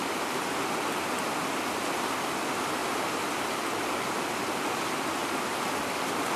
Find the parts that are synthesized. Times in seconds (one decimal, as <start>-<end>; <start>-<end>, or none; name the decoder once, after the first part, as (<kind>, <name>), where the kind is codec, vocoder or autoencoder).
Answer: none